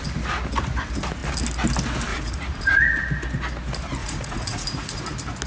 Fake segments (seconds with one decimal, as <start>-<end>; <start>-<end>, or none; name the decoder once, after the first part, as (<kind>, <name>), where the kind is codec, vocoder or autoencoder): 2.1-2.8 (vocoder, Vocos); 4.0-5.0